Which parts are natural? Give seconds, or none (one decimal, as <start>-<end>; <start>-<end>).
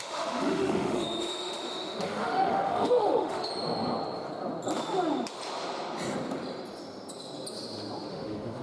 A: 3.5-8.1